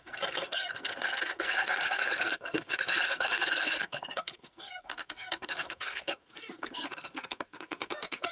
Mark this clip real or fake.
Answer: fake